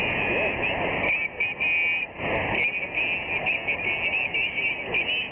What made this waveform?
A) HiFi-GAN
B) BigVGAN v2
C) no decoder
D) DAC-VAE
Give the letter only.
C